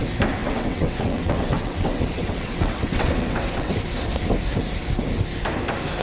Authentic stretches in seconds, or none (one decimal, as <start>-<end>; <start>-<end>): 0.0-0.4; 3.7-6.0